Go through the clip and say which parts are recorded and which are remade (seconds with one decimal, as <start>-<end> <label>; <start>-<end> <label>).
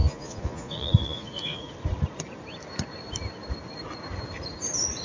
0.0-1.7 remade; 1.7-5.0 recorded